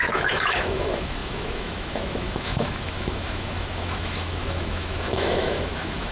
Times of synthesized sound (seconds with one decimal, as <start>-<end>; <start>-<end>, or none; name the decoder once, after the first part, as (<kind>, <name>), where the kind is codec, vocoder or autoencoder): 0.0-6.1 (autoencoder, DAC-VAE)